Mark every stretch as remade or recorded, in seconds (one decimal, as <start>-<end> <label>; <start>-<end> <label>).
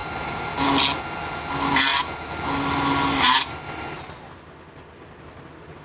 0.0-5.8 recorded